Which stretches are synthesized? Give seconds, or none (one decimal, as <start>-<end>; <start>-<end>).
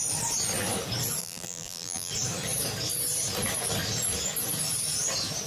1.2-2.1